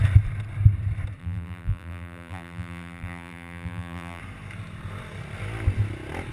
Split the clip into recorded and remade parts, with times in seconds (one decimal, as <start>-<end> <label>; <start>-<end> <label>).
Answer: 0.0-1.2 recorded; 1.2-4.2 remade; 4.2-6.3 recorded